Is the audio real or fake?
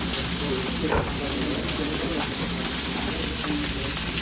real